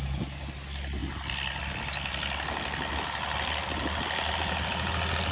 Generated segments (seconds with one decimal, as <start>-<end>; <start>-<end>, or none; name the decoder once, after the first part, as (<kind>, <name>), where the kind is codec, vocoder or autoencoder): none